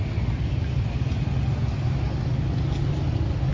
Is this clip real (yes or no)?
yes